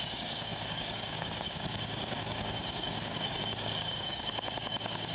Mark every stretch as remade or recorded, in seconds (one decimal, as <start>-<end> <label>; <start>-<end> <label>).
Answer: 0.0-5.1 remade

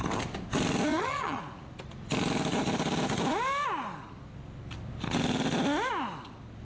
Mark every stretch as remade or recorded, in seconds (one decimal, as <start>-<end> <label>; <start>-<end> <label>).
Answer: 0.0-0.9 recorded; 0.9-1.4 remade; 1.4-6.6 recorded

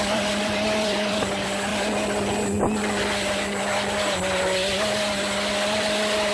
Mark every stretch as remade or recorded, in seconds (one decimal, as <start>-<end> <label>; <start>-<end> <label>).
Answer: 0.0-1.7 remade; 1.7-5.5 recorded; 5.5-6.3 remade

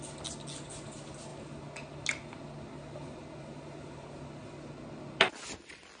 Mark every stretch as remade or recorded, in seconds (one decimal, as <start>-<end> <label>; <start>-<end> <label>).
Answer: 0.0-6.0 recorded

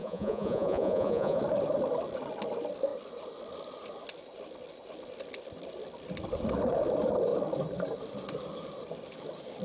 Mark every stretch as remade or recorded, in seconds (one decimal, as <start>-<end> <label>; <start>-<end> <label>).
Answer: 0.0-1.4 remade; 1.4-9.6 recorded

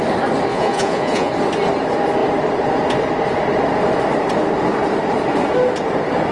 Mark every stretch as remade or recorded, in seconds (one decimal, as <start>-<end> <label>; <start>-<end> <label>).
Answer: 0.0-0.5 recorded; 0.5-1.3 remade; 1.3-6.3 recorded

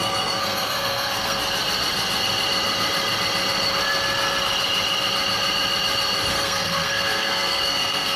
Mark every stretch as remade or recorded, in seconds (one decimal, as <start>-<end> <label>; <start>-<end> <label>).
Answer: 0.0-1.4 remade; 1.4-6.3 recorded; 6.3-8.2 remade

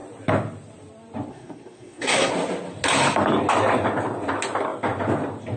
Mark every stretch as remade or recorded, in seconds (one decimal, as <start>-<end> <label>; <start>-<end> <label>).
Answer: 0.0-1.3 recorded; 1.3-2.3 remade; 2.3-5.6 recorded